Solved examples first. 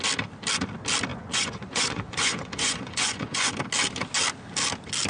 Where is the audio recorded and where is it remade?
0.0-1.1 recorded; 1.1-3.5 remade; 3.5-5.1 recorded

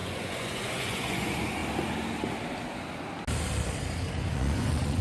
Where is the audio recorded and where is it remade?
0.0-1.6 remade; 1.6-4.3 recorded; 4.3-5.0 remade

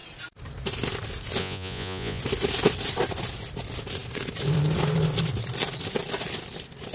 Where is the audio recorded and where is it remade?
0.0-1.4 recorded; 1.4-2.2 remade; 2.2-6.9 recorded

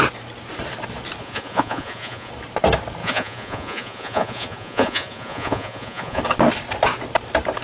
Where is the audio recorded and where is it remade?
0.0-1.2 recorded; 1.2-2.3 remade; 2.3-3.0 recorded; 3.0-6.2 remade; 6.2-7.6 recorded

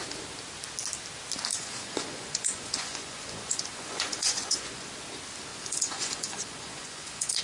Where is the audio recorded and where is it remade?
0.0-1.5 recorded; 1.5-4.9 remade; 4.9-5.5 recorded; 5.5-7.4 remade

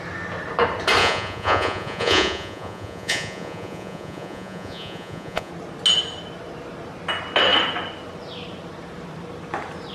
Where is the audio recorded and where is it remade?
0.0-1.0 recorded; 1.0-5.5 remade; 5.5-9.9 recorded